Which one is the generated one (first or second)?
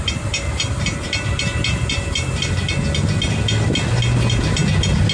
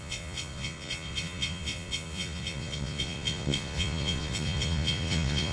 second